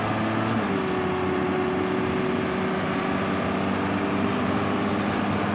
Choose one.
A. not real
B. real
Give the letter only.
B